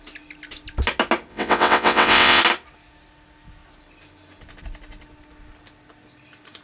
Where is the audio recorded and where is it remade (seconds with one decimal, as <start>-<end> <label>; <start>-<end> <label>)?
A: 0.0-1.3 recorded; 1.3-2.4 remade; 2.4-6.6 recorded